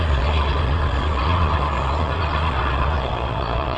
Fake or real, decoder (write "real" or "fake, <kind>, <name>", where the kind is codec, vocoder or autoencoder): fake, vocoder, Vocos